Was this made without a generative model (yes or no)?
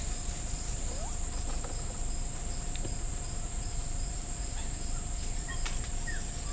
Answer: no